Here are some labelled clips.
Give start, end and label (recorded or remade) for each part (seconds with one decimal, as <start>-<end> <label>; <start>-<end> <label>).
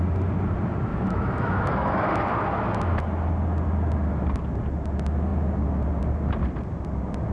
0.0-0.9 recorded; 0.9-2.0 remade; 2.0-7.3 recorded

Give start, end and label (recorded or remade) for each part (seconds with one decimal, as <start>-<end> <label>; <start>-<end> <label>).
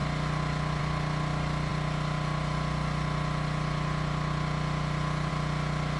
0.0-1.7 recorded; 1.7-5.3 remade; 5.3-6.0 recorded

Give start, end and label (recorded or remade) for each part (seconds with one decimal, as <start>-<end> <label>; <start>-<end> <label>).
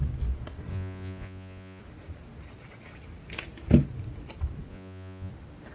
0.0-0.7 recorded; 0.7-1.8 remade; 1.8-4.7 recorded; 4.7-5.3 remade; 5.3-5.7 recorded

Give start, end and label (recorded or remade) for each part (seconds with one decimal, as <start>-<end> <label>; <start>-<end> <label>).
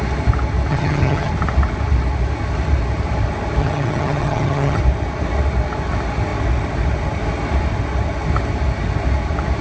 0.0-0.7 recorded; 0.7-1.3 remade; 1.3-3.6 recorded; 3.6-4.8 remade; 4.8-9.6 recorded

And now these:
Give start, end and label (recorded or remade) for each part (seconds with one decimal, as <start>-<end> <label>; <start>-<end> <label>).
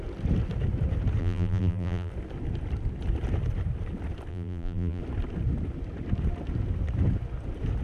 0.0-1.2 recorded; 1.2-2.1 remade; 2.1-4.3 recorded; 4.3-5.0 remade; 5.0-7.8 recorded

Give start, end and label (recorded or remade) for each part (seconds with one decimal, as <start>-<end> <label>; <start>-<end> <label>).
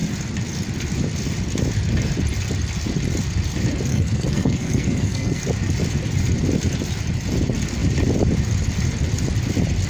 0.0-3.9 recorded; 3.9-5.4 remade; 5.4-9.9 recorded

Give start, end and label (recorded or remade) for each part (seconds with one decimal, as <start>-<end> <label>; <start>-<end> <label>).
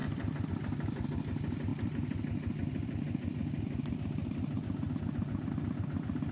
0.0-0.5 remade; 0.5-6.3 recorded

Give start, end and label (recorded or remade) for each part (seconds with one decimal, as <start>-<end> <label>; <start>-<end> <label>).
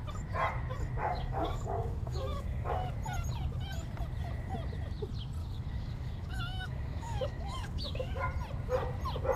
0.0-1.0 recorded; 1.0-2.9 remade; 2.9-5.4 recorded; 5.4-8.2 remade; 8.2-9.4 recorded